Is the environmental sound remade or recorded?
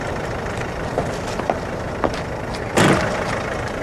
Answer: recorded